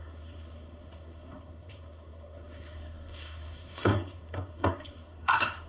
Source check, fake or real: fake